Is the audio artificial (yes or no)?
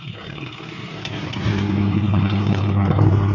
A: yes